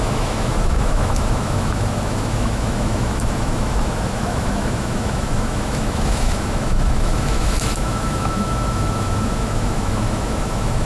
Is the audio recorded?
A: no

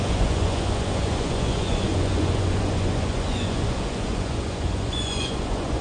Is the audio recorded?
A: no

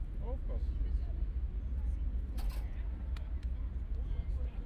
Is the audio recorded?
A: yes